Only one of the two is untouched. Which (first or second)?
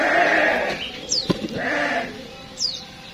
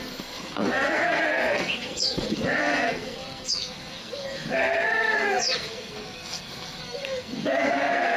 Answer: first